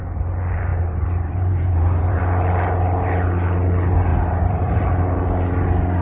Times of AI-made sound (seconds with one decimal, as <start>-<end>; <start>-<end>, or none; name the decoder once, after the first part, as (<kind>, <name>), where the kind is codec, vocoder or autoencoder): 0.7-2.2 (vocoder, BigVGAN v2); 4.1-4.8